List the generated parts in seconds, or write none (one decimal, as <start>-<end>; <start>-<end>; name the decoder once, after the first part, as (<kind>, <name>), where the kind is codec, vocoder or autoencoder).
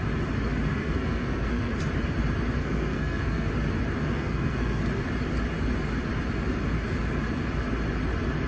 0.7-1.7 (codec, SNAC); 2.6-3.5; 4.0-4.8